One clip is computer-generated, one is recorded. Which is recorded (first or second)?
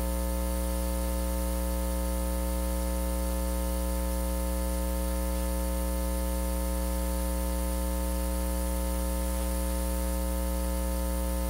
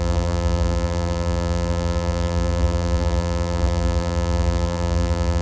first